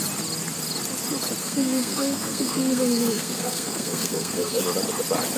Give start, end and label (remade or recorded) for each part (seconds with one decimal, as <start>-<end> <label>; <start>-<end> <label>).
0.0-1.4 recorded; 1.4-4.6 remade; 4.6-5.4 recorded